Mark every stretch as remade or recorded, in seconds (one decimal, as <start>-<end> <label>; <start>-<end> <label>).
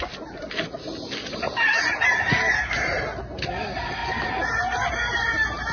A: 0.0-5.7 recorded